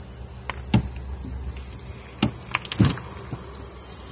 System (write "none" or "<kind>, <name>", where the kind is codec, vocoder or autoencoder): none